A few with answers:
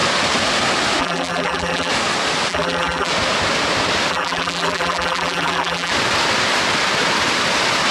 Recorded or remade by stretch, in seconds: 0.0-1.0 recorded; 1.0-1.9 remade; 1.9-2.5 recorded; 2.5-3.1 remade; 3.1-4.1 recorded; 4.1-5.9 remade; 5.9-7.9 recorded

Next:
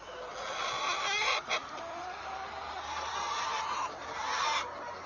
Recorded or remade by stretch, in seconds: 0.0-5.1 recorded